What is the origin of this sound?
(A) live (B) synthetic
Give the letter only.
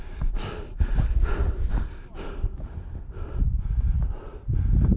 A